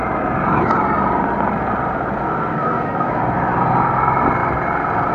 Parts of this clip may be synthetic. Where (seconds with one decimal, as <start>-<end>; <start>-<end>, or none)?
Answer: 2.2-3.2